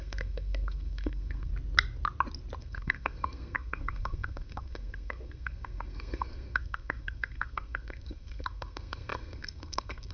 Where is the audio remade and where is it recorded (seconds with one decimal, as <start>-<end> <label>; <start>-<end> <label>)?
0.0-1.5 remade; 1.5-2.6 recorded; 2.6-10.1 remade